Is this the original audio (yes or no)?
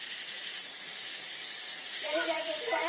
no